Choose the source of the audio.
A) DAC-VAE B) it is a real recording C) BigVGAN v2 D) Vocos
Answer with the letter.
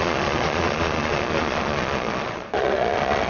D